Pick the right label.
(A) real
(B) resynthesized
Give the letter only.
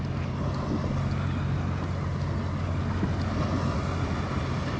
A